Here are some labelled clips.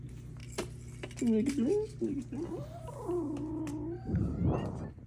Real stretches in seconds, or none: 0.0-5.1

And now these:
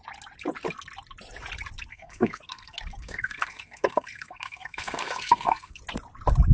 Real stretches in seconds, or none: 0.0-1.9; 5.8-6.5

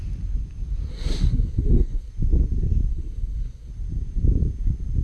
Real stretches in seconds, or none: 0.0-0.9; 2.1-2.9; 3.7-5.0

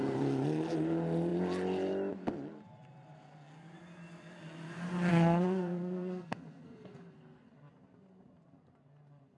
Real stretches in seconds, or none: 0.0-5.1; 7.5-9.4

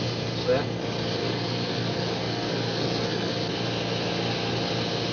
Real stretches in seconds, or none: 0.0-1.2; 3.3-5.1

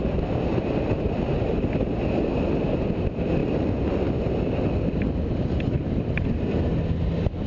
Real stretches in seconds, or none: 0.0-7.5